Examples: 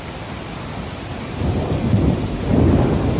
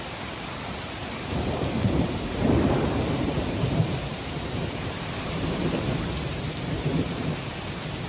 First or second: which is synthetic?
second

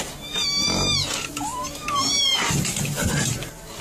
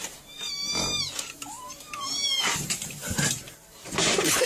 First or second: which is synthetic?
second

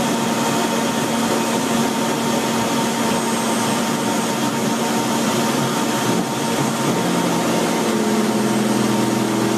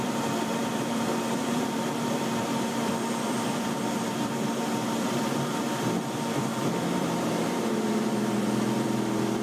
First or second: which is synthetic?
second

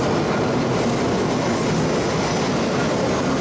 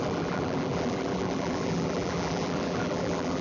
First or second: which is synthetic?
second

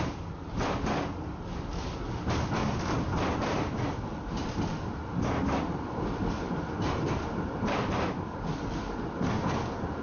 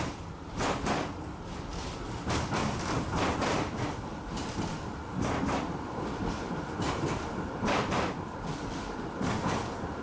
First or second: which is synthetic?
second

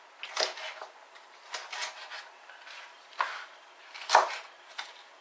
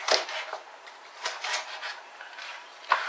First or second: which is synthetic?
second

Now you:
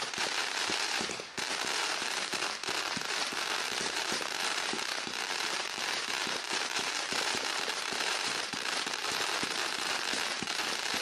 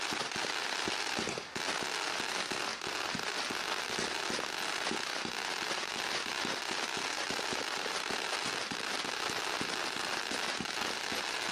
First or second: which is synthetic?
first